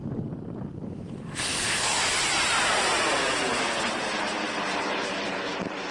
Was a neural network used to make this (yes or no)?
no